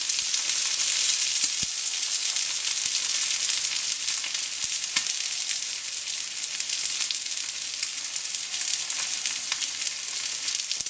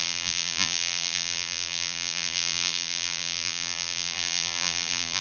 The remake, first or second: second